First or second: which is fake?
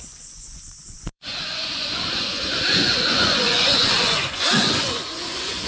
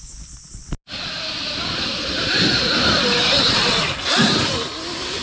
first